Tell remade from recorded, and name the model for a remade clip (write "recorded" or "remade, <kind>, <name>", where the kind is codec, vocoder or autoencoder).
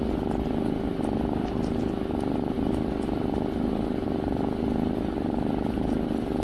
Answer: recorded